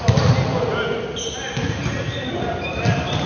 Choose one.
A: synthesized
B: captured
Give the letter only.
B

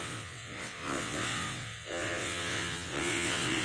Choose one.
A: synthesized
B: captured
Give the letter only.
A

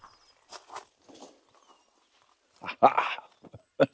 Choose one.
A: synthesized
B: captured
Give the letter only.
B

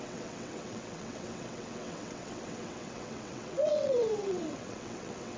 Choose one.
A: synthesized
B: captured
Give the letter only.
A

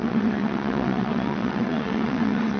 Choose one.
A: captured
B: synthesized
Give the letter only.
B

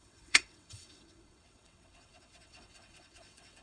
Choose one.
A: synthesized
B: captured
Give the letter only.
A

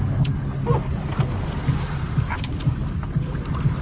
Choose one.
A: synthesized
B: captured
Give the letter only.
B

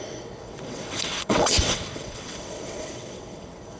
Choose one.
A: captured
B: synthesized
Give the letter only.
B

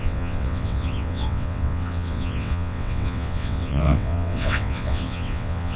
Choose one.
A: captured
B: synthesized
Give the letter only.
B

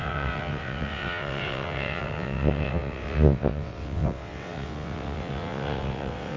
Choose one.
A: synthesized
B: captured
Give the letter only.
A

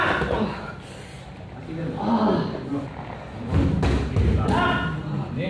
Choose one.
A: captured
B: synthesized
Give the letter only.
A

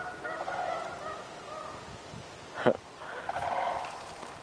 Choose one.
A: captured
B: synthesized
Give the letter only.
A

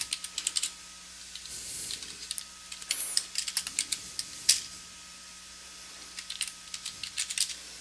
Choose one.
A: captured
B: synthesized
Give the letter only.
A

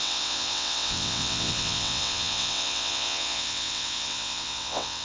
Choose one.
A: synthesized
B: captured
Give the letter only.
A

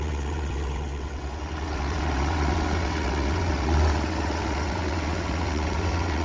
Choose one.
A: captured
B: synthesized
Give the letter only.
B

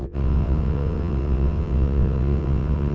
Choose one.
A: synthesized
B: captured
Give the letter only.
A